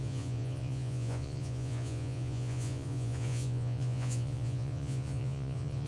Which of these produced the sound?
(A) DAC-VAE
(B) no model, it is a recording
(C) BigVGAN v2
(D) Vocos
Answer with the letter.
D